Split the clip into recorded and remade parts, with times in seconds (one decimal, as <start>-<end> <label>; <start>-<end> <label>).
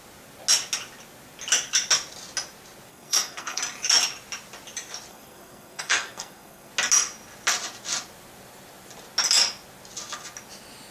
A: 0.0-2.9 recorded; 2.9-3.6 remade; 3.6-5.1 recorded; 5.1-6.7 remade; 6.7-10.9 recorded